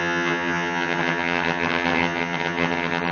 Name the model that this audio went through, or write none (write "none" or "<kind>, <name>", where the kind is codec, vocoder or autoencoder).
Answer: vocoder, HiFi-GAN